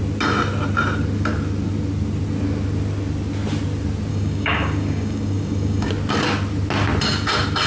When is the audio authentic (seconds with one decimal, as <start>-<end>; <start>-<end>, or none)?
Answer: 0.0-4.1; 5.9-7.7